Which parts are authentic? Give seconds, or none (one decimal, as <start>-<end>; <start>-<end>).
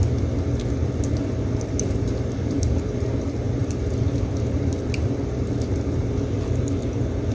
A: 0.0-0.8; 3.1-3.6; 6.6-7.3